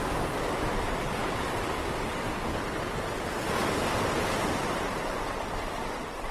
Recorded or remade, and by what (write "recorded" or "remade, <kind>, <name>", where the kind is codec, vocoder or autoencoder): remade, vocoder, BigVGAN v2